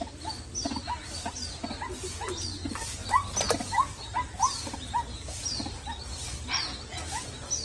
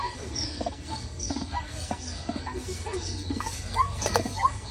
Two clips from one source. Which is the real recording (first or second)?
first